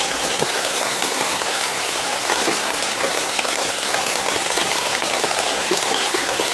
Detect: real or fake fake